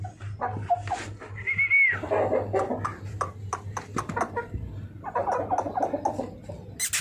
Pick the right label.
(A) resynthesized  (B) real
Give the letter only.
B